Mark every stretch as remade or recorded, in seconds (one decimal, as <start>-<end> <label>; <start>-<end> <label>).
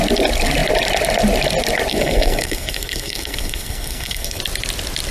0.0-1.9 recorded; 1.9-4.4 remade; 4.4-5.1 recorded